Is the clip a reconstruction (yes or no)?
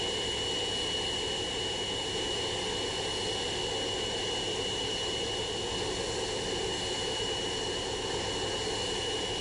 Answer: no